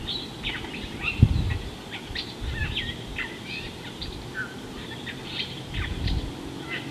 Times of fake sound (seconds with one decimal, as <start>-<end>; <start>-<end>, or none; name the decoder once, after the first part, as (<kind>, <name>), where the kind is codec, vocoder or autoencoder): none